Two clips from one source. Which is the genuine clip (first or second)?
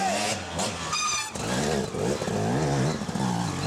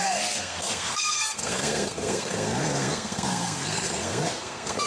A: first